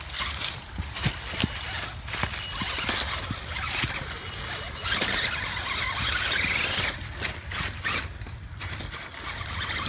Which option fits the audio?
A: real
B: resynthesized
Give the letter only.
A